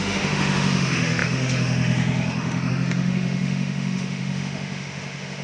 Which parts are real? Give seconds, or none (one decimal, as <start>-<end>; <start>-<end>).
none